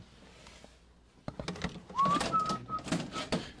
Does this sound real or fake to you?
real